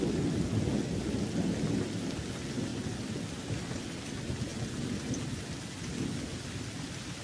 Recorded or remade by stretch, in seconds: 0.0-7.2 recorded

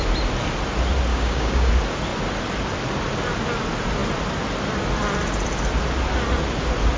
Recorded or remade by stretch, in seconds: 0.0-1.1 recorded; 1.1-1.7 remade; 1.7-7.0 recorded